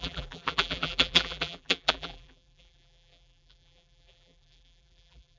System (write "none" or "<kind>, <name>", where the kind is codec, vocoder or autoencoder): vocoder, BigVGAN v2